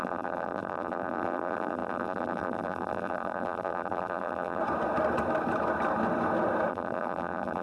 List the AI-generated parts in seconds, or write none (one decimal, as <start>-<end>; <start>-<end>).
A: 0.0-4.6; 6.7-7.6